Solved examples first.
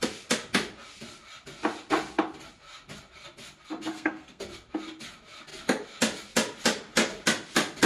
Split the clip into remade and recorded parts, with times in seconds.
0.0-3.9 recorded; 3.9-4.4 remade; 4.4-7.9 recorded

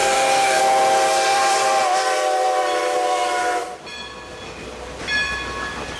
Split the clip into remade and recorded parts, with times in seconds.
0.0-0.6 remade; 0.6-6.0 recorded

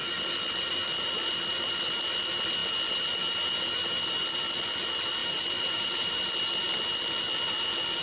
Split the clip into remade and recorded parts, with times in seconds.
0.0-5.2 recorded; 5.2-6.1 remade; 6.1-8.0 recorded

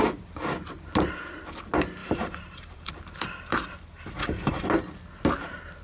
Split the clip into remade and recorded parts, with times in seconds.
0.0-2.0 recorded; 2.0-2.9 remade; 2.9-4.2 recorded; 4.2-4.7 remade; 4.7-5.8 recorded